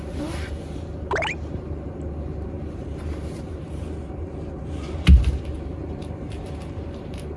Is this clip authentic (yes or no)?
no